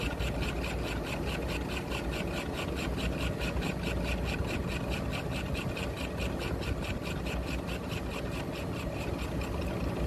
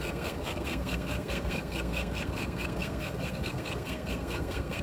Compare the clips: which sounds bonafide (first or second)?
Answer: first